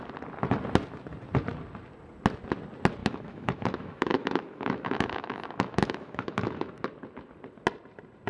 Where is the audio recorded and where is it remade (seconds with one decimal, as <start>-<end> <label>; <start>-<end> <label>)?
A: 0.0-3.0 recorded; 3.0-6.7 remade; 6.7-8.3 recorded